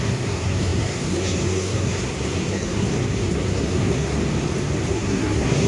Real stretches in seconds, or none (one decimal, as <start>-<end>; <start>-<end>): 4.2-4.9

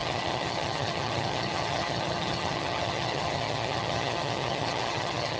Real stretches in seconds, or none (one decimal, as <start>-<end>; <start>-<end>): none

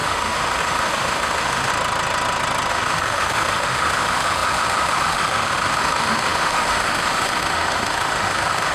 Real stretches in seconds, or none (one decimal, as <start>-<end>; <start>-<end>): 1.7-2.7

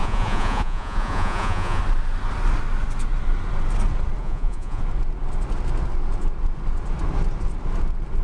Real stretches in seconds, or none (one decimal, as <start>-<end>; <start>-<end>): 1.8-4.2; 4.8-8.2

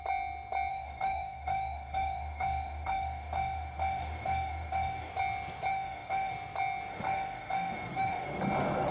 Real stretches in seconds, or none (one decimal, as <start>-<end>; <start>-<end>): 0.0-0.7; 5.1-5.7; 6.3-6.9; 8.4-8.9